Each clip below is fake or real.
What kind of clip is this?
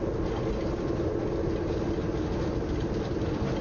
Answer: real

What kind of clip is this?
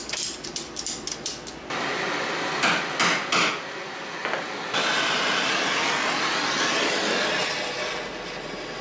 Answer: real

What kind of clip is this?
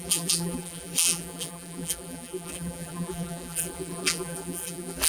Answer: fake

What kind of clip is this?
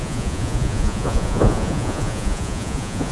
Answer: fake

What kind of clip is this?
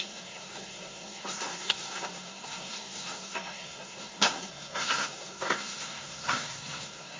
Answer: fake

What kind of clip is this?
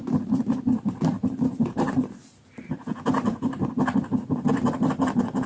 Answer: fake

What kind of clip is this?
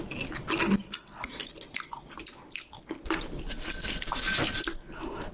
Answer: real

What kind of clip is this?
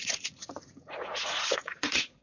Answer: fake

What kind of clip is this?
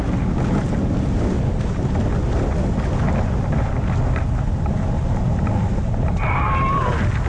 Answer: real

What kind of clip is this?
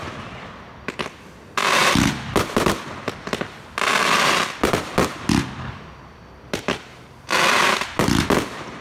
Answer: real